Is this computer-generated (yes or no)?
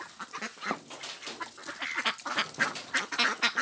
no